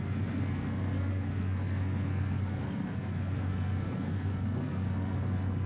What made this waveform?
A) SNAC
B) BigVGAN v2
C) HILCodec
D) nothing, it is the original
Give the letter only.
A